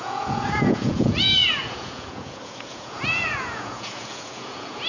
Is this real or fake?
fake